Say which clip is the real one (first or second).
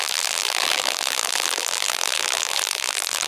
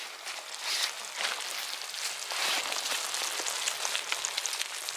second